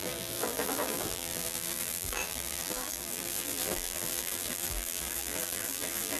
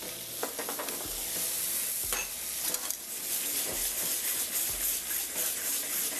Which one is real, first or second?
second